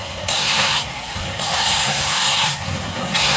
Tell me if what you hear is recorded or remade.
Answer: remade